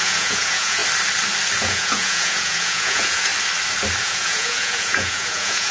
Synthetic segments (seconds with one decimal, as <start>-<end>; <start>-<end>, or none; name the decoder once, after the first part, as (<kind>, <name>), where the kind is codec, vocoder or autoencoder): 0.0-0.8 (vocoder, Vocos); 1.6-3.3; 4.0-5.7